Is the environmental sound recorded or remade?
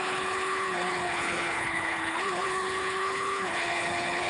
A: remade